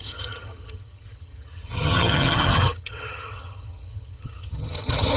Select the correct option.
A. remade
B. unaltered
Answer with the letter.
A